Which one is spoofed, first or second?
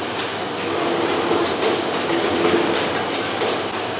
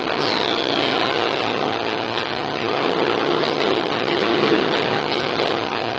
second